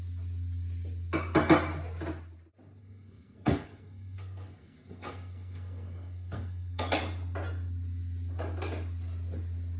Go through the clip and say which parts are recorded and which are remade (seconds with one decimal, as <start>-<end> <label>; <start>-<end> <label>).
0.0-2.8 recorded; 2.8-7.0 remade; 7.0-9.8 recorded